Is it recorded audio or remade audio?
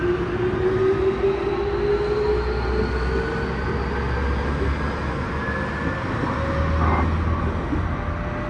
recorded